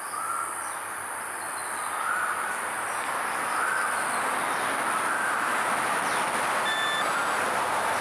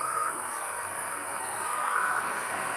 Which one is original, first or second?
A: first